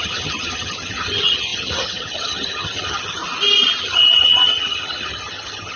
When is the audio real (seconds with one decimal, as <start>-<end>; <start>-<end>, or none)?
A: 3.2-3.8